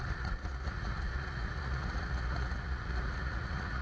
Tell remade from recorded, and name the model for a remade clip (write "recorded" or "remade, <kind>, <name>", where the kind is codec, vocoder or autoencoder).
remade, vocoder, Vocos